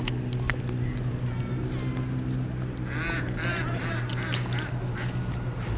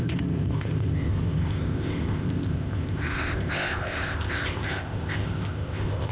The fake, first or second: second